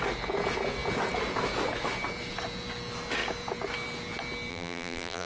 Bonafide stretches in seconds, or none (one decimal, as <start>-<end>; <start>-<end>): 0.0-4.5